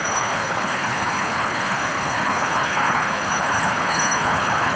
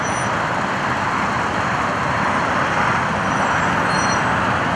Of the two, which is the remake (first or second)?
first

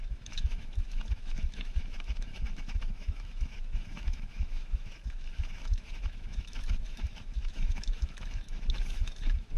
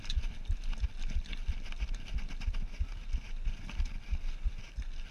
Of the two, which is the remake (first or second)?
first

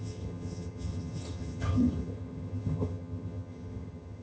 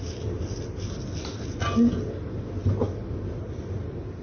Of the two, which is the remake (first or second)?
first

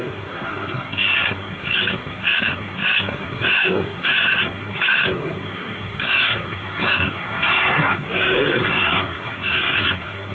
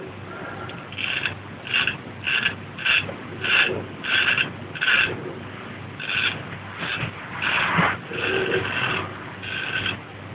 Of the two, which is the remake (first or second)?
first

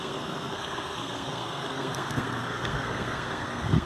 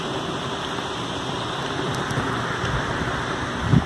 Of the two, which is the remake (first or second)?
first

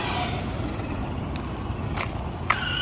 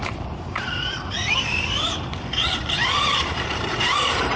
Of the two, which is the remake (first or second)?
second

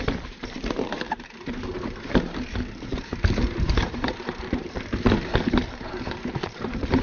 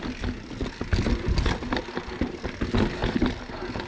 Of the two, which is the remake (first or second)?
first